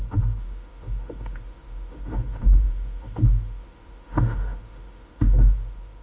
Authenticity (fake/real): fake